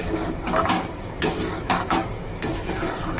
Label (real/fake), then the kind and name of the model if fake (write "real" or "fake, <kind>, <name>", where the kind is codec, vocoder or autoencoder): fake, codec, DAC